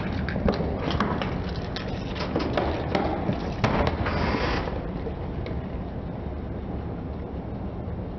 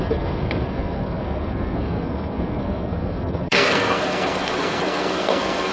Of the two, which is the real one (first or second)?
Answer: first